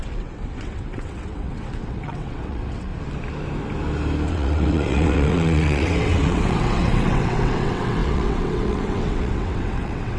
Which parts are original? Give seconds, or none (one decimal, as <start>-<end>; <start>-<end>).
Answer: 2.9-4.3